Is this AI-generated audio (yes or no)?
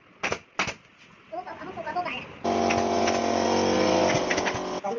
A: no